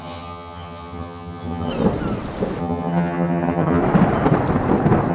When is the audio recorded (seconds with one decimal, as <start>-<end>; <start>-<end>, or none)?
1.7-2.6; 3.8-5.1